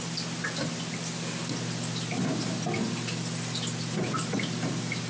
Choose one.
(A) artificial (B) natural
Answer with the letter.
B